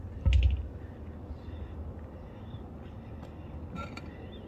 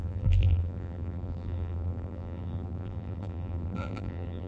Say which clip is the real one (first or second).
first